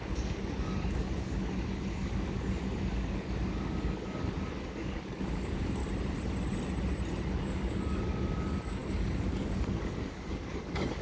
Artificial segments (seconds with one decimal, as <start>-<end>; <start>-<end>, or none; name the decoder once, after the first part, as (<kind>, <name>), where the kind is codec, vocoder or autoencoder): 0.0-5.8 (codec, DAC); 7.3-11.0